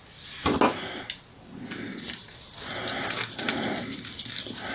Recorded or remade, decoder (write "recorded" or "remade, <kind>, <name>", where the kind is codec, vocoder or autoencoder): recorded